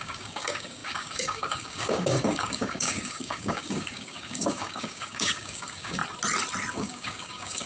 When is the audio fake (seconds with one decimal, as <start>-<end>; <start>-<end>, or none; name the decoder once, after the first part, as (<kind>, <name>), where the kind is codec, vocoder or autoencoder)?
0.0-6.0 (codec, DAC); 6.7-7.7